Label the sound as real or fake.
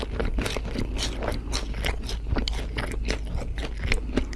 real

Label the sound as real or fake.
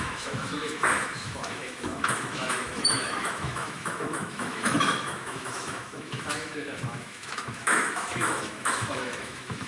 fake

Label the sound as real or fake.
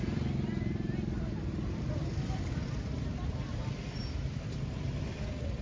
real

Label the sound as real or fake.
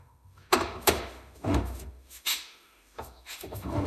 fake